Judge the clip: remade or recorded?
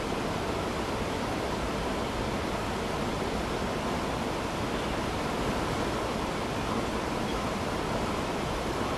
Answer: recorded